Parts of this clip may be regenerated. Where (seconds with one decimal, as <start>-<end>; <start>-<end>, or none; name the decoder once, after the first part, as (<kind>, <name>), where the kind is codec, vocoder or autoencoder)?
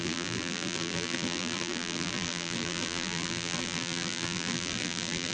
0.0-5.3 (vocoder, BigVGAN v2)